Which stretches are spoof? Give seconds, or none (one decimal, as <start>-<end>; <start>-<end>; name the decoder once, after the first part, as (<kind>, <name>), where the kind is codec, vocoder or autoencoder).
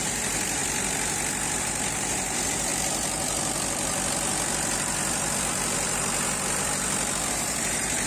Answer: 0.0-0.6 (vocoder, BigVGAN v2); 1.6-2.7; 7.3-8.1